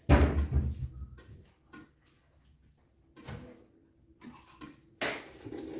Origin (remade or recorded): recorded